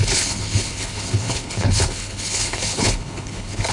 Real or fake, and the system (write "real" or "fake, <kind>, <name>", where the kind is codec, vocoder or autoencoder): fake, codec, HILCodec